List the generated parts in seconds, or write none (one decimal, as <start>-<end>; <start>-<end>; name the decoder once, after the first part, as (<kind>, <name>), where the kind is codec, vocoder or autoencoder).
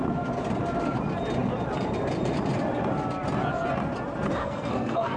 4.4-5.2 (codec, SNAC)